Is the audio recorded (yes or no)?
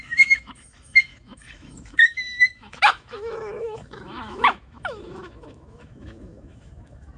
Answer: no